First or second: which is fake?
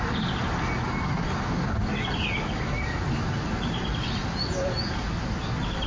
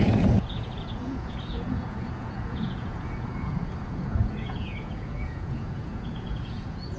second